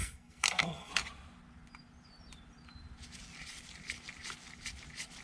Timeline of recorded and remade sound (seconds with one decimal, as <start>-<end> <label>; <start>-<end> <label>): 0.0-0.9 remade; 0.9-5.2 recorded